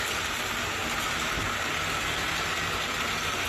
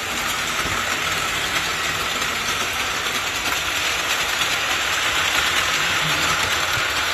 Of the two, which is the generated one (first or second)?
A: second